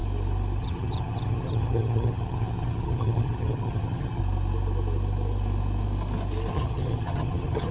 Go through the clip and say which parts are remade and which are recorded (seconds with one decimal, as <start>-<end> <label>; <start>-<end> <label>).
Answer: 0.0-0.6 recorded; 0.6-4.2 remade; 4.2-6.5 recorded; 6.5-7.7 remade